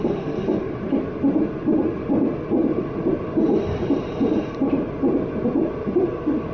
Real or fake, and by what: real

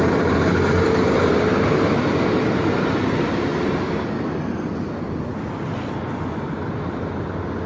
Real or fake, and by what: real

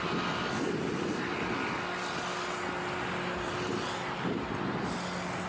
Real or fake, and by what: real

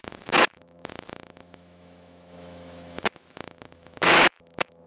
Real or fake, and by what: fake, autoencoder, DAC-VAE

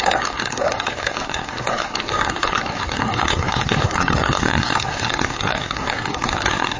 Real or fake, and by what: fake, codec, SNAC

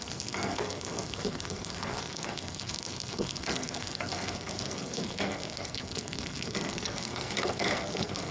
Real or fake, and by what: fake, codec, SNAC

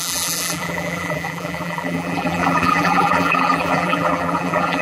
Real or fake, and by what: fake, vocoder, BigVGAN v2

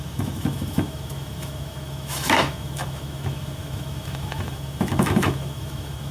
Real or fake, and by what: fake, autoencoder, DAC-VAE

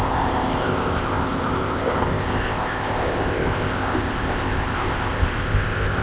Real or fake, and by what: fake, codec, ZipCodec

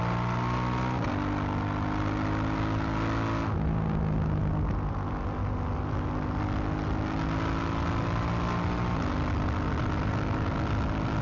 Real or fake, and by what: real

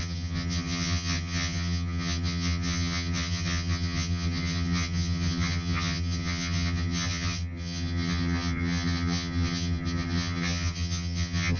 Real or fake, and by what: fake, vocoder, HiFi-GAN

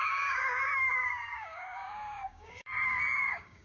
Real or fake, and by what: fake, codec, DAC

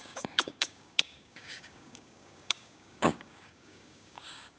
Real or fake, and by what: fake, codec, DAC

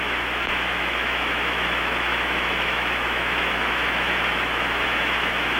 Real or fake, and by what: fake, autoencoder, DAC-VAE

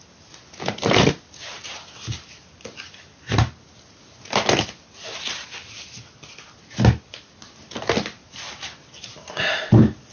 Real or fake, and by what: real